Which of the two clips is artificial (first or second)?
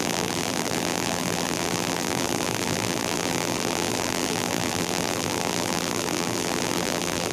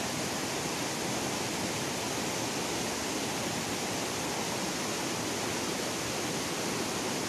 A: first